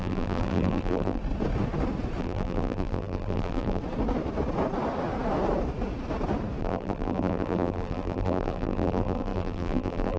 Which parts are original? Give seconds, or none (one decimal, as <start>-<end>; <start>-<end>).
1.2-2.2; 3.8-6.6